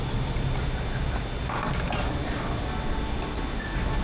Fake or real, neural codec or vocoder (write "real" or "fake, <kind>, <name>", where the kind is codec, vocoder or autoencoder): real